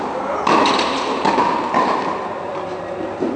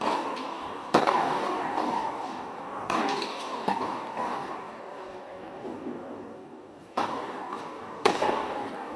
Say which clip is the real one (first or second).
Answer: first